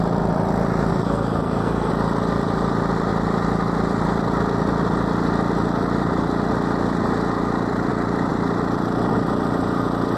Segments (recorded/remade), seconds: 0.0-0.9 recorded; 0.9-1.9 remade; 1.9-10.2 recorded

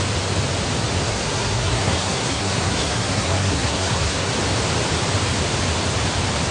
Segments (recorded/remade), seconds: 0.0-1.1 recorded; 1.1-4.3 remade; 4.3-6.5 recorded

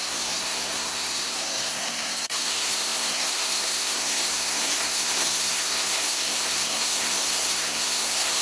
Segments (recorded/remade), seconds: 0.0-8.4 remade

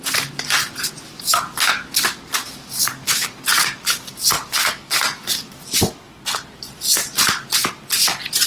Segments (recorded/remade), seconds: 0.0-1.1 recorded; 1.1-6.2 remade; 6.2-8.5 recorded

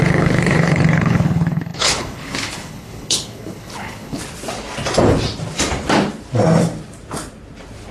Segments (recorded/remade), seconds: 0.0-4.2 remade; 4.2-7.9 recorded